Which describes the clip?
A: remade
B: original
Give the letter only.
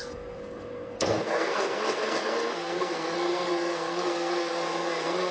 A